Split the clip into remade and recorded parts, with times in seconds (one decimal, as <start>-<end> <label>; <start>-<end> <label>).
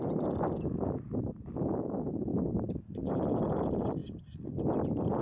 0.0-5.2 recorded